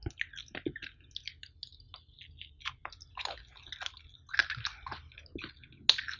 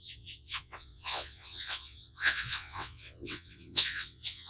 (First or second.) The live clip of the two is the first